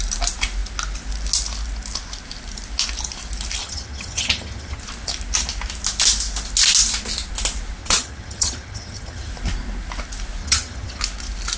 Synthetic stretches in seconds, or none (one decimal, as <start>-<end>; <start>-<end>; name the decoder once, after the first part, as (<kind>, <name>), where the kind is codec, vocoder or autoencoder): 3.6-4.8 (vocoder, HiFi-GAN); 7.8-9.3; 10.4-11.0